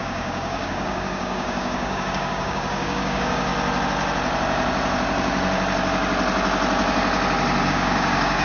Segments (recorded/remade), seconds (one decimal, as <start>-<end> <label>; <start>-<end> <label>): 0.0-3.5 remade; 3.5-7.7 recorded; 7.7-8.4 remade